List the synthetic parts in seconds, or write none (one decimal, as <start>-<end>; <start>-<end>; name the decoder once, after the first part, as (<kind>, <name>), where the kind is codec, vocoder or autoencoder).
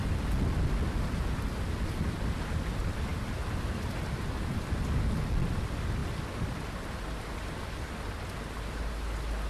none